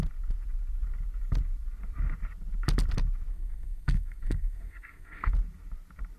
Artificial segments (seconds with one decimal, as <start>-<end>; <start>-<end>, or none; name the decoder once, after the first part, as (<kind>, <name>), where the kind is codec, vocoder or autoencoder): 3.3-5.3 (codec, SNAC)